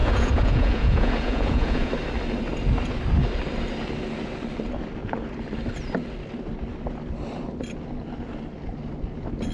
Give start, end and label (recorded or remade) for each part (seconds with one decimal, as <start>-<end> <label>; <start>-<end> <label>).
0.0-1.9 remade; 1.9-9.5 recorded